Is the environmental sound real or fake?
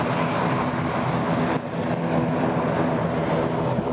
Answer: real